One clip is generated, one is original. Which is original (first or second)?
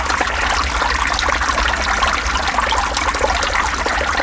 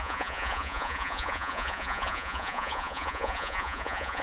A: first